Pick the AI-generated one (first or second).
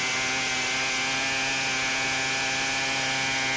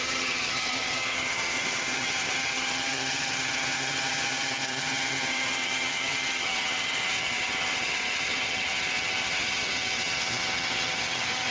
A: second